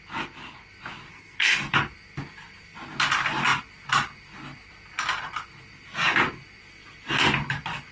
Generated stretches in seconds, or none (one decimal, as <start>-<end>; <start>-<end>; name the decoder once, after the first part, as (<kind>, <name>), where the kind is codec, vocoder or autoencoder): 1.1-1.7 (codec, SNAC)